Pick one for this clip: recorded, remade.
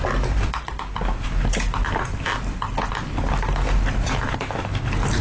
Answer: recorded